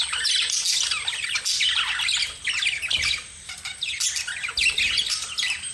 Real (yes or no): yes